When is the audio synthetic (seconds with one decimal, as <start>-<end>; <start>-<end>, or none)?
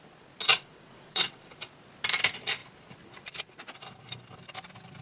0.5-1.5